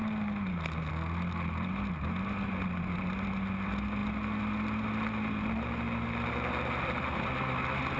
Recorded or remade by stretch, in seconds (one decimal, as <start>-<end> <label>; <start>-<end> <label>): 0.0-8.0 recorded